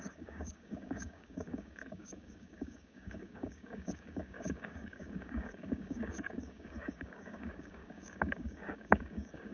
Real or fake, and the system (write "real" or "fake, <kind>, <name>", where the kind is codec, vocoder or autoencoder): fake, codec, DAC